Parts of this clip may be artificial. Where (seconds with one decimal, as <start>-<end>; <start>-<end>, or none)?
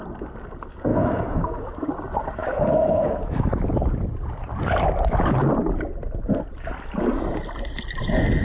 0.9-1.9; 2.4-3.5